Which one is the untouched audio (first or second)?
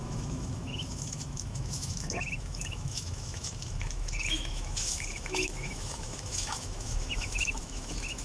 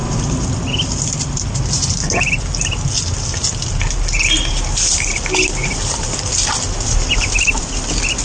second